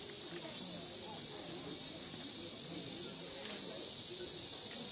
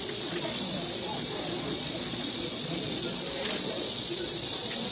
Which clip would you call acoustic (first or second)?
first